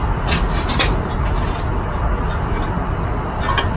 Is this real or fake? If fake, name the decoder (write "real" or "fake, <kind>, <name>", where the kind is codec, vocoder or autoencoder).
real